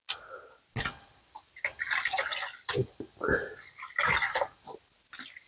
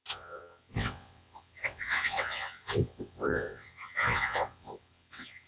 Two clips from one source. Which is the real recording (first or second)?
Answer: first